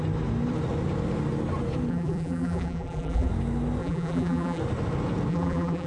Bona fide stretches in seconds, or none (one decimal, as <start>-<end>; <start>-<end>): 0.0-1.9; 3.3-3.8; 4.6-5.3